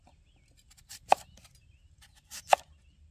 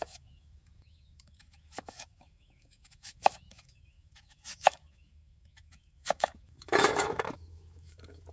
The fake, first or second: second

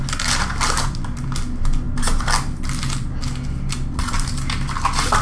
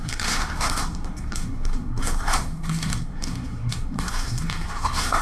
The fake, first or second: second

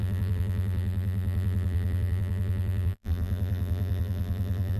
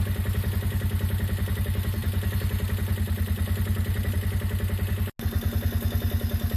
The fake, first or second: first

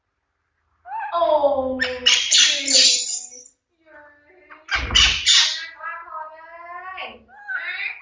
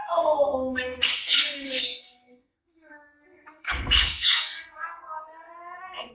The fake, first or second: second